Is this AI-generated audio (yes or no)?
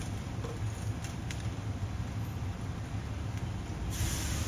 no